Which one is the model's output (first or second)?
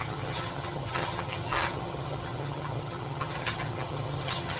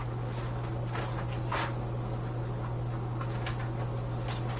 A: first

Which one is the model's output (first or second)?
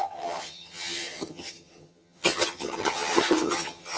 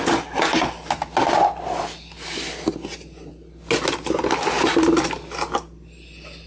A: first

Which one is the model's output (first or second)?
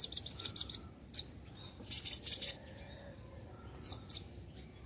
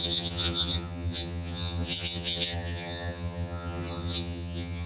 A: second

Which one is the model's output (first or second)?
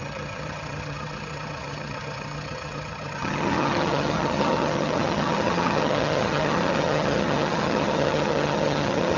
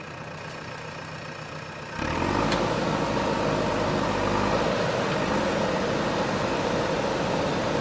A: first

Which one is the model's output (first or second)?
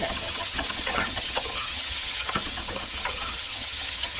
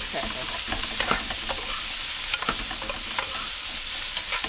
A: first